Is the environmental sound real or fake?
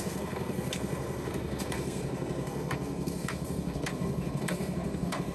fake